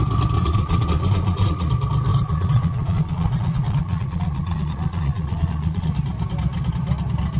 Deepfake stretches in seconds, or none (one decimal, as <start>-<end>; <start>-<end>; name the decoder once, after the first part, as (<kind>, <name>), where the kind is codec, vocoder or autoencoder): 0.4-1.7 (vocoder, Vocos); 2.1-5.9